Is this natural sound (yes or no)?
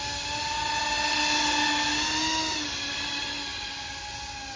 yes